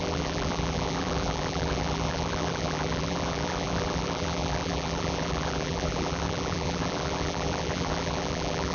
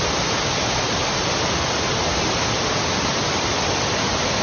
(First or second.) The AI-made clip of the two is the first